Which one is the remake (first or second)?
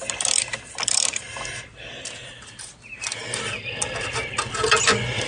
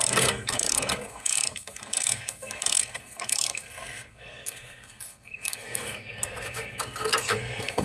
second